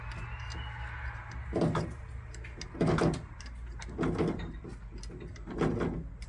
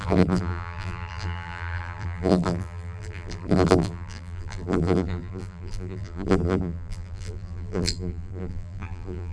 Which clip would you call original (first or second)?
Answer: first